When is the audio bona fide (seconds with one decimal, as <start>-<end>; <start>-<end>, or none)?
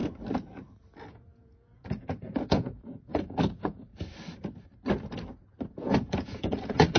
0.0-1.1; 3.9-5.7